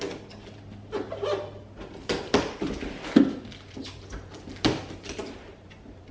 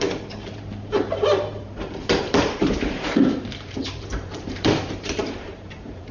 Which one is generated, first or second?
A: second